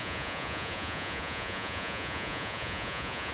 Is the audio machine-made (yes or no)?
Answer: yes